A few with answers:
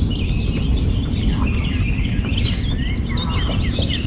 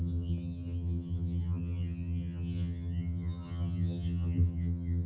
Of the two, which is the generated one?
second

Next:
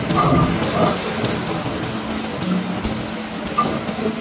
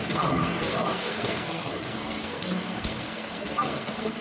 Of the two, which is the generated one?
second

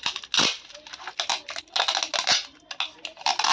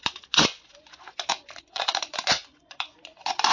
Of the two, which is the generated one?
second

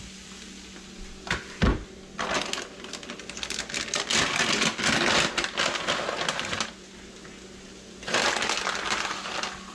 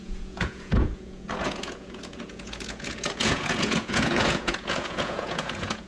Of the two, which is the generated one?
second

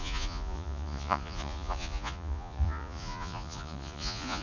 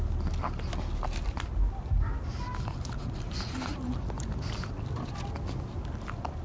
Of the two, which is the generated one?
first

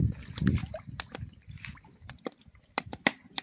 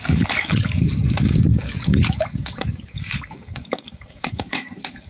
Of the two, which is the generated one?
second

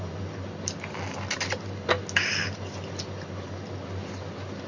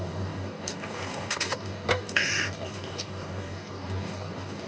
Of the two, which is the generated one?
second